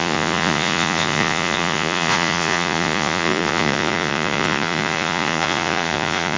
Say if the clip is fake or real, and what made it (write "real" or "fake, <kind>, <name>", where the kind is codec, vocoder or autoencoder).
fake, vocoder, Vocos